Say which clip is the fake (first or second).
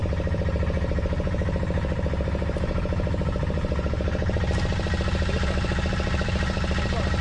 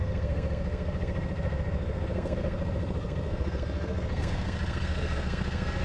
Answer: second